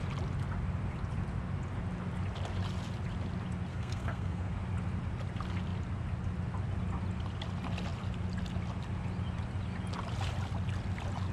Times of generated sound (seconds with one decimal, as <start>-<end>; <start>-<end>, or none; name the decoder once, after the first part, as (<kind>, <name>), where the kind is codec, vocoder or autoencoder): 3.7-4.5 (codec, SNAC)

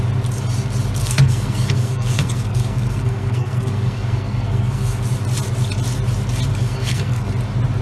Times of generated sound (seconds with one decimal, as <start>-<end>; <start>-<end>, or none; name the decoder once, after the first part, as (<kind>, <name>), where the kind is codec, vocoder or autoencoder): 1.0-5.0 (codec, SNAC); 6.5-7.3

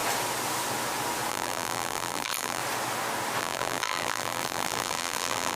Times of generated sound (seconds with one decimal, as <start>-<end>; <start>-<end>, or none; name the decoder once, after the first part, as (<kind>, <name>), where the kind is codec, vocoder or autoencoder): 1.3-2.6 (vocoder, BigVGAN v2); 3.4-5.6